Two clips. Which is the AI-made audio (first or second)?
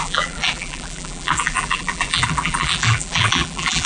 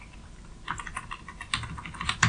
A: first